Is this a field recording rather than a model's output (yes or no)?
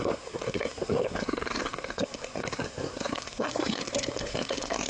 no